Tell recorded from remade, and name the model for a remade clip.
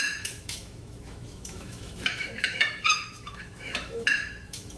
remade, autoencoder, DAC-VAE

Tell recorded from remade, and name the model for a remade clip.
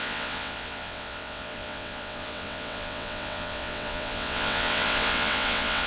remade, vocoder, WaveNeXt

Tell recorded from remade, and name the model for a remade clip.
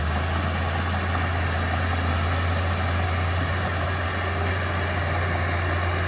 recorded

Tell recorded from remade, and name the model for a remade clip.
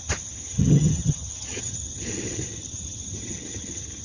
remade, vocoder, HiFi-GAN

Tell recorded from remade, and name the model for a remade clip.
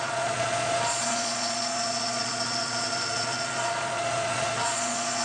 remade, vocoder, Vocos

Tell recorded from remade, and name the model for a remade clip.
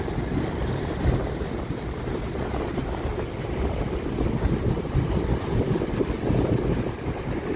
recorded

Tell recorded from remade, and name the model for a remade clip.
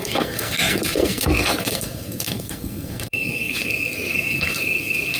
remade, codec, SNAC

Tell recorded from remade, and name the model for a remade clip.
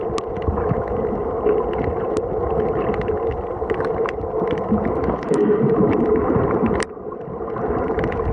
recorded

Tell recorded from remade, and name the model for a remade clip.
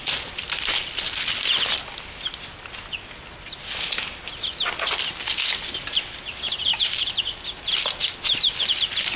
recorded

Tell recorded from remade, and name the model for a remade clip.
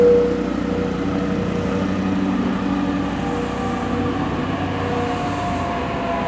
recorded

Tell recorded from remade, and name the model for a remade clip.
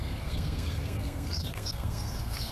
remade, codec, SNAC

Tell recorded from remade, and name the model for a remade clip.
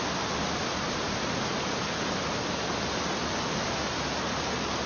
recorded